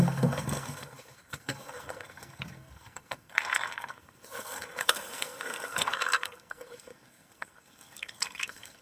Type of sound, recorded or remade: remade